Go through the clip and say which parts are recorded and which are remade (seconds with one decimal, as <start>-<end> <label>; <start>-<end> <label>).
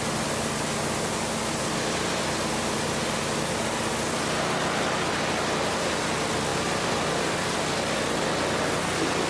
0.0-9.3 recorded